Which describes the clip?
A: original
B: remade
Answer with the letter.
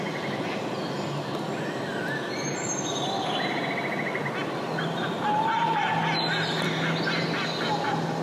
A